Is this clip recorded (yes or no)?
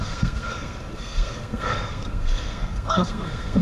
no